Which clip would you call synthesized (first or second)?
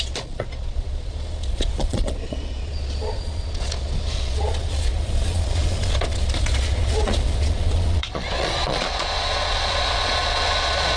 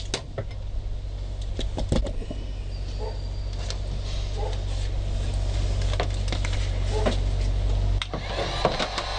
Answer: first